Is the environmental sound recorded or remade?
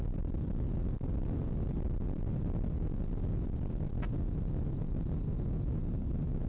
recorded